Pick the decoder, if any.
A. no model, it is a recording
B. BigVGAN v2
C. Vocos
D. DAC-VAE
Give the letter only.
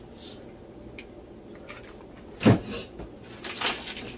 A